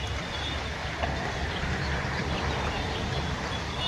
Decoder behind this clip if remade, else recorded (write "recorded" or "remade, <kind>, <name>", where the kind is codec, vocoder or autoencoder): recorded